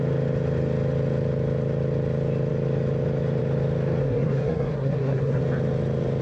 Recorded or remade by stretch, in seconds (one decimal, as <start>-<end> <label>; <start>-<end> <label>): 0.0-4.0 recorded; 4.0-5.4 remade; 5.4-6.2 recorded